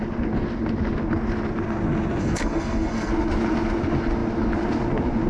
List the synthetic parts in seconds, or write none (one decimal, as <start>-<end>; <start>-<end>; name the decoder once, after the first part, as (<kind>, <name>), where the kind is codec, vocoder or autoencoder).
2.2-3.1 (codec, SNAC)